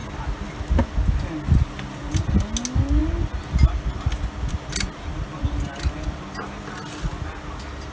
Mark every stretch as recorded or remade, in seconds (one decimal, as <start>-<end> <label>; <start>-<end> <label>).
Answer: 0.0-7.9 recorded